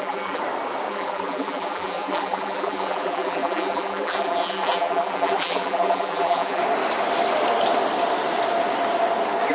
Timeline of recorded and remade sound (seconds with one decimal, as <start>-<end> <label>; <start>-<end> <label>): 0.0-0.4 remade; 0.4-0.9 recorded; 0.9-6.6 remade; 6.6-9.5 recorded